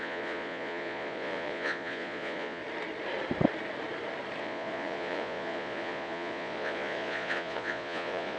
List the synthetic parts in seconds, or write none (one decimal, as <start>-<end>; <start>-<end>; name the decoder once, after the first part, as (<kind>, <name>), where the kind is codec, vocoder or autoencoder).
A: 0.0-2.6 (vocoder, Vocos); 4.4-8.4